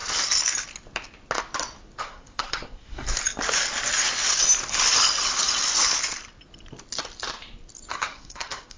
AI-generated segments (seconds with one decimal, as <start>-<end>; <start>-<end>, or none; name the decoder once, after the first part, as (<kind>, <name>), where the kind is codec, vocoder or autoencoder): 2.0-3.2 (codec, SNAC); 7.9-8.8